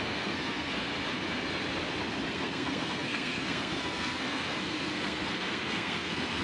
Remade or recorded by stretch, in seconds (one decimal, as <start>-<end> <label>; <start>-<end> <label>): 0.0-0.9 remade; 0.9-2.3 recorded; 2.3-6.4 remade